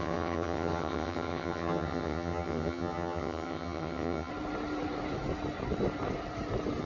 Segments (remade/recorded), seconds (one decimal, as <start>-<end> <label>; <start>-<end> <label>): 0.0-4.3 remade; 4.3-6.8 recorded